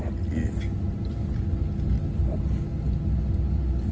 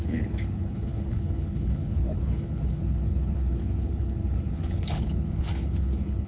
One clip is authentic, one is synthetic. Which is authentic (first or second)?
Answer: first